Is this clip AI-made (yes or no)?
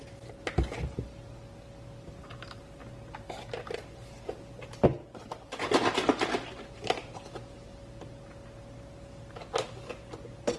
no